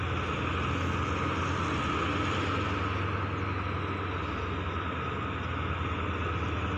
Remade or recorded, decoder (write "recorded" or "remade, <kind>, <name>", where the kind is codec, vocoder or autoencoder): recorded